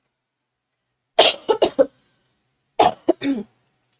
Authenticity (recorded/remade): recorded